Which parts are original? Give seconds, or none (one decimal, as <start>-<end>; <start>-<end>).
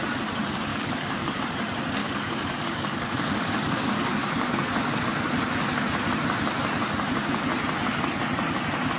0.0-0.7; 1.4-2.0; 5.0-9.0